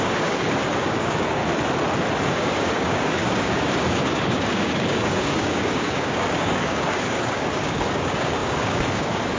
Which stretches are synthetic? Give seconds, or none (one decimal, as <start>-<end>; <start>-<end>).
0.0-1.4; 2.2-9.4